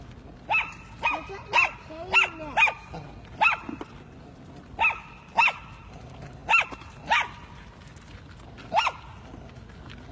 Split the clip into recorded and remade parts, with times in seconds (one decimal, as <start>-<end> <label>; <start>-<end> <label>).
0.0-10.1 recorded

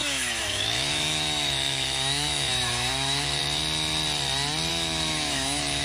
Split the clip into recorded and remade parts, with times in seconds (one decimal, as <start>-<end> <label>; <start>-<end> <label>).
0.0-3.4 remade; 3.4-4.7 recorded; 4.7-5.8 remade

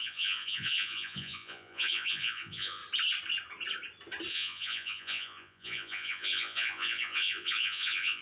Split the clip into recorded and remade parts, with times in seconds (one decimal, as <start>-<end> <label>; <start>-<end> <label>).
0.0-2.8 remade; 2.8-4.3 recorded; 4.3-8.2 remade

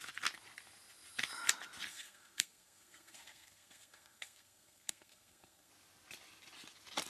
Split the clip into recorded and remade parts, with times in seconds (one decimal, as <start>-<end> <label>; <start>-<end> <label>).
0.0-1.9 recorded; 1.9-5.7 remade; 5.7-7.1 recorded

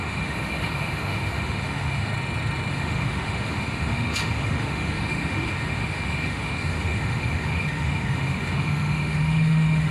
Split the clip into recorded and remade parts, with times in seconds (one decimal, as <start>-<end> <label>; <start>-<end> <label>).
0.0-2.1 remade; 2.1-2.7 recorded; 2.7-9.9 remade

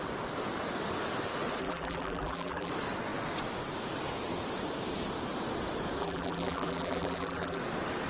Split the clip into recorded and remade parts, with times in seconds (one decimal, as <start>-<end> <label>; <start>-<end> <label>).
0.0-1.6 recorded; 1.6-2.7 remade; 2.7-6.0 recorded; 6.0-7.6 remade; 7.6-8.1 recorded

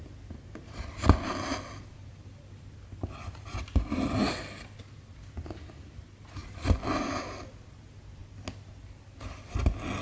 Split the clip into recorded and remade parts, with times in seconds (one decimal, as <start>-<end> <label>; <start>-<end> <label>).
0.0-10.0 recorded

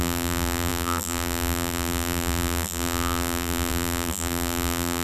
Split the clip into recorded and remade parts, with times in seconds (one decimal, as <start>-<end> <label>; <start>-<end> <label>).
0.0-5.0 remade